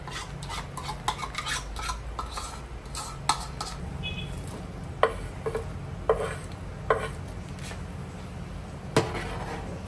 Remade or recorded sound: recorded